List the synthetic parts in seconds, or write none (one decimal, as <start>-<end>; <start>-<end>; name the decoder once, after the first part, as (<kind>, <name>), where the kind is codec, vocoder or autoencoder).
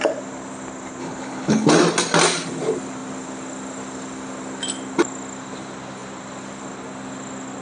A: 1.0-1.7 (codec, HILCodec)